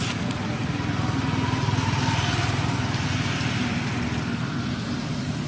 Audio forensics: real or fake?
real